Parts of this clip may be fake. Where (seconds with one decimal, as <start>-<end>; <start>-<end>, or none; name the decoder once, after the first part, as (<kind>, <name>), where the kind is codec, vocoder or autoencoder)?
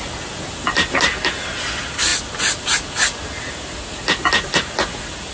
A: none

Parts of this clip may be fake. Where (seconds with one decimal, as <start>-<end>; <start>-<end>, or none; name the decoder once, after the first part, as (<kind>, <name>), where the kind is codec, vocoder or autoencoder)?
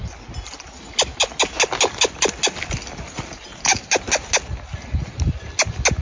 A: none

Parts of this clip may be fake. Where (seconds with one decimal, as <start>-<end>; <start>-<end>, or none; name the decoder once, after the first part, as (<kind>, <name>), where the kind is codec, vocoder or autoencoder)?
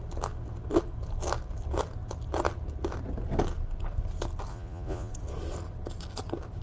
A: 4.5-5.1 (vocoder, Vocos)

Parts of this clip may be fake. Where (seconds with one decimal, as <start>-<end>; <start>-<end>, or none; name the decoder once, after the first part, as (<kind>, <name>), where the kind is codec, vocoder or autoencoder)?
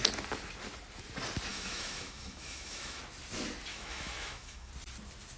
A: 1.5-3.0 (autoencoder, DAC-VAE); 3.7-4.7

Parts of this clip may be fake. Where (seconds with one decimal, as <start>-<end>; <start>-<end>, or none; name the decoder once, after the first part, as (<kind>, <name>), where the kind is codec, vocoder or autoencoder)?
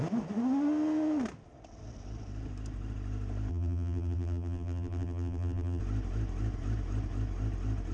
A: 3.5-5.8 (vocoder, BigVGAN v2)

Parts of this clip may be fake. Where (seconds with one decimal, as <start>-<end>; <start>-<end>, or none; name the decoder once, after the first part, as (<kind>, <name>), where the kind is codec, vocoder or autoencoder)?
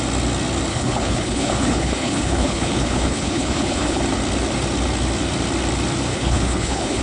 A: 0.7-4.0 (codec, HILCodec); 6.1-7.0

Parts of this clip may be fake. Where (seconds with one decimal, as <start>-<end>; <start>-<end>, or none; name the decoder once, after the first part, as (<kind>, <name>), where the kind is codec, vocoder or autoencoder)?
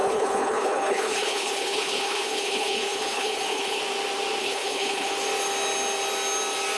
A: 0.0-3.8 (codec, HILCodec); 4.4-5.1